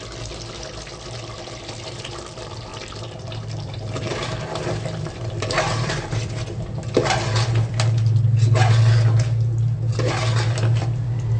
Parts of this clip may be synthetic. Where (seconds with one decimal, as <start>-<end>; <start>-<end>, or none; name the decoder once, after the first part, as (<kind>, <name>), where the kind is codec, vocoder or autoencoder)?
2.7-6.3 (vocoder, BigVGAN v2)